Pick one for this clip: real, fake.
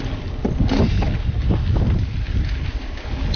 real